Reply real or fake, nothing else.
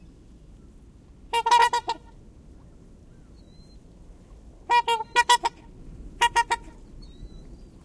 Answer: real